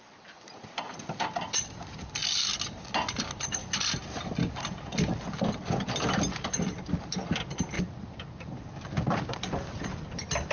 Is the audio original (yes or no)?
yes